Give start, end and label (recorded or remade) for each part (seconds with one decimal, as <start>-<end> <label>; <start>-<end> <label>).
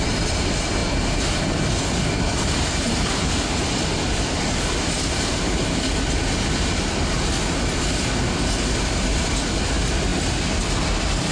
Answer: 0.0-11.3 recorded